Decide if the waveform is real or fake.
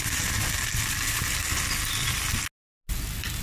real